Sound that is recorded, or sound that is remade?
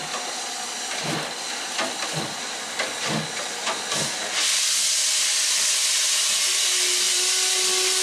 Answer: recorded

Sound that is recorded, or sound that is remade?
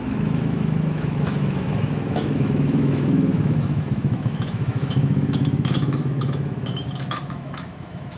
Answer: remade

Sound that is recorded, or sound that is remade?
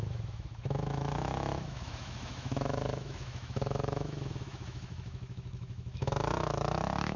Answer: remade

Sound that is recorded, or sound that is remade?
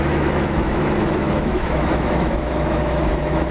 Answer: remade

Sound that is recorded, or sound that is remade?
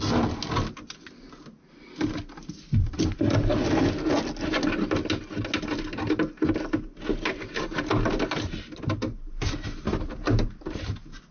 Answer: recorded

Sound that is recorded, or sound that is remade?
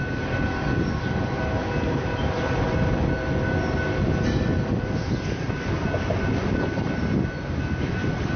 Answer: recorded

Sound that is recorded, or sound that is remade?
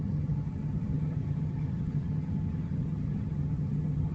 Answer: remade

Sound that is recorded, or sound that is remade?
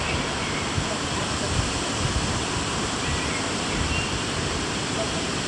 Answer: recorded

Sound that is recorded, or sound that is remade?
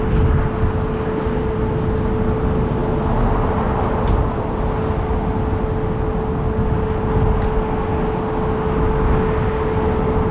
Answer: recorded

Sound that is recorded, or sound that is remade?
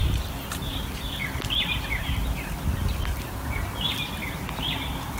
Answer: recorded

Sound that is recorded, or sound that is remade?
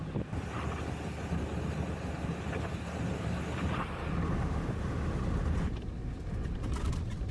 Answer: recorded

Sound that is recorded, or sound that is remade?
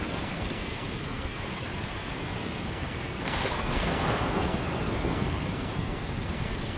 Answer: remade